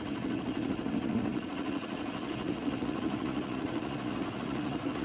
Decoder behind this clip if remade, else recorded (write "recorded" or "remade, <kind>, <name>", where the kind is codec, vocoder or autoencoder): remade, vocoder, Vocos